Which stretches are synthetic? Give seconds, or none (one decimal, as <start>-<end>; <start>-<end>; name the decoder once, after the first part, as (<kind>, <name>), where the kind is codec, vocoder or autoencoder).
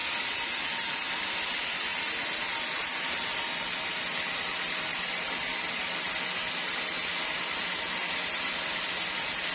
none